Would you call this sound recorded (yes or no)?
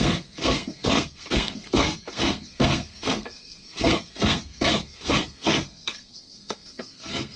no